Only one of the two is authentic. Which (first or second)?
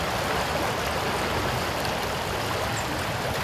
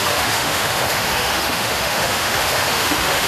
first